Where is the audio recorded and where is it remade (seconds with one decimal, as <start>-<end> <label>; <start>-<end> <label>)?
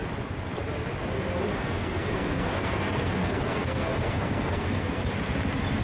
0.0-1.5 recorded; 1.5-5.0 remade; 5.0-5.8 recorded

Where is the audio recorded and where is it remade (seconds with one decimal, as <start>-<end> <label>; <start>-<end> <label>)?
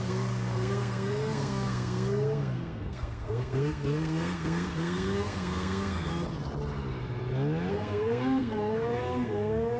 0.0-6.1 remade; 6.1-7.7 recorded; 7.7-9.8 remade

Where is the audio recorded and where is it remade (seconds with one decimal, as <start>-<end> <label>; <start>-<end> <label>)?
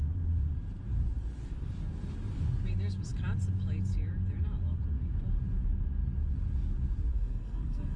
0.0-7.1 recorded; 7.1-8.0 remade